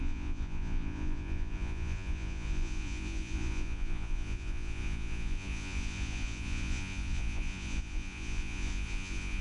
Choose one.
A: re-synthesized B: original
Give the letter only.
A